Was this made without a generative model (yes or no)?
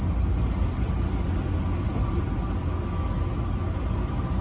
yes